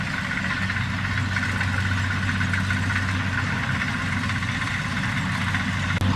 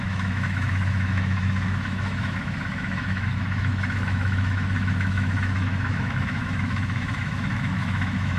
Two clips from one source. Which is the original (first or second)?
first